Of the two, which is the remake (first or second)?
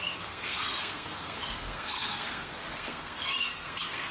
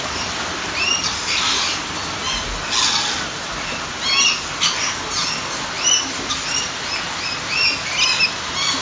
first